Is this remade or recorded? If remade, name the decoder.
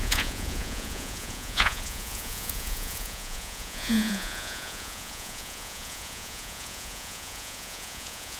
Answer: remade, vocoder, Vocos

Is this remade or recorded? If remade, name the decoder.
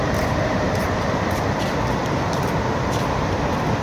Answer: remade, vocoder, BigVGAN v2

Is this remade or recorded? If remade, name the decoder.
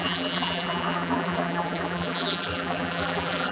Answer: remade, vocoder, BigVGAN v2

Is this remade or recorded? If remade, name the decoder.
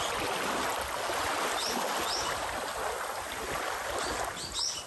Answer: recorded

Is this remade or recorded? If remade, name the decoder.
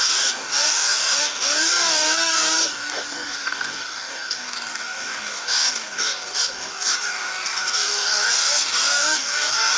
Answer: remade, codec, DAC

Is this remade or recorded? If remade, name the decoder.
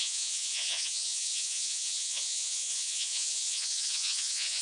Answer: remade, vocoder, Vocos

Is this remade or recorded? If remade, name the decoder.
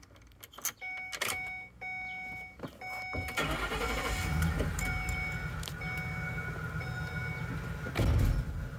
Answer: recorded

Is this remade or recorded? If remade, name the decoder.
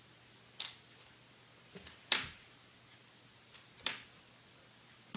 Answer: recorded